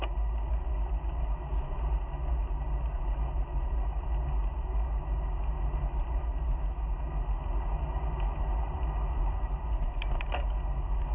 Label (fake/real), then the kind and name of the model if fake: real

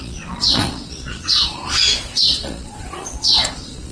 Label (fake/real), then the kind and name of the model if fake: fake, vocoder, Vocos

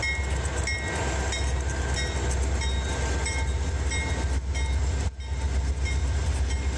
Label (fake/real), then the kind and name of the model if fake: real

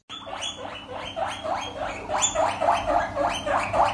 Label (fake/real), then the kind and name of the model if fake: real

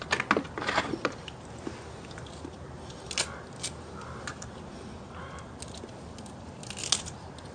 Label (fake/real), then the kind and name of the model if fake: real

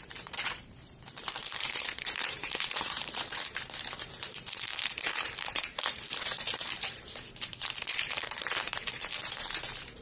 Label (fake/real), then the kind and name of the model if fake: fake, vocoder, BigVGAN v2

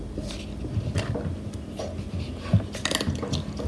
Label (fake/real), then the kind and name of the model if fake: real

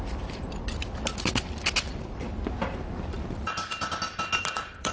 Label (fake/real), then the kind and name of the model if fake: fake, vocoder, BigVGAN v2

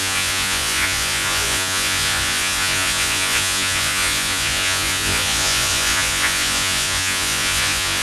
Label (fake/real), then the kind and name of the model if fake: fake, vocoder, Vocos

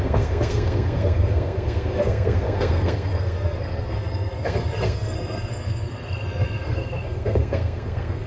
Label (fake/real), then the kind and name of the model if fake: fake, codec, SNAC